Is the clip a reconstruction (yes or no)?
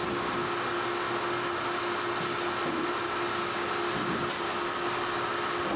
no